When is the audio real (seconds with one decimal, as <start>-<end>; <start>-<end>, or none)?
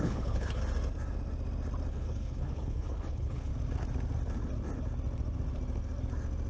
0.6-1.9; 3.5-6.5